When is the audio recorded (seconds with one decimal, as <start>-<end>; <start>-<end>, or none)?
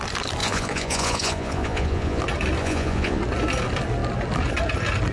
0.0-0.4; 2.2-2.6; 3.2-5.1